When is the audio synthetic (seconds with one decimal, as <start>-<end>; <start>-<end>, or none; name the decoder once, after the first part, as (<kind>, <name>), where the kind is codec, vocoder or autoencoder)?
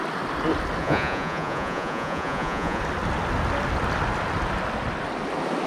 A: 0.8-2.8 (vocoder, Vocos)